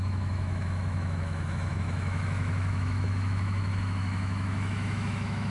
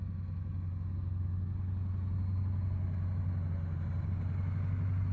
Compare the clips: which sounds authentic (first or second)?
second